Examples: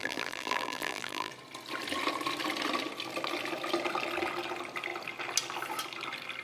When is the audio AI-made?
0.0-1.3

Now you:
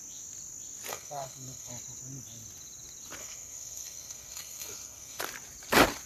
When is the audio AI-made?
0.9-1.7; 3.2-5.2

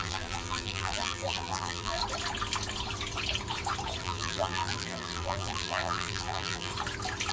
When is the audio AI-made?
0.0-2.0; 4.0-6.7